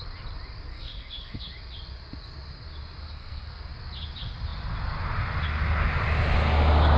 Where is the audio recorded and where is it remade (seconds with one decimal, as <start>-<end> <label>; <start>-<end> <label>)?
0.0-0.7 recorded; 0.7-1.5 remade; 1.5-3.0 recorded; 3.0-3.6 remade; 3.6-7.0 recorded